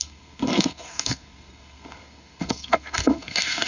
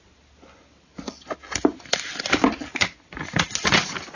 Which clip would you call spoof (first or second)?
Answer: first